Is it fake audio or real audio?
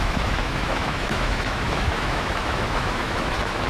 fake